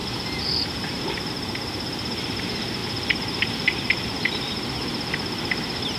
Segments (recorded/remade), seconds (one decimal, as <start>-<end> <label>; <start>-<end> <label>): 0.0-2.8 recorded; 2.8-4.5 remade; 4.5-6.0 recorded